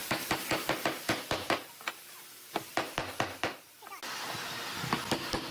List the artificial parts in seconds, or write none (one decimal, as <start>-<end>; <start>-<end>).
none